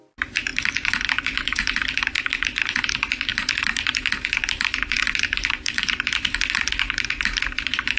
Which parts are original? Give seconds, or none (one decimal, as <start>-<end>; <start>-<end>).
none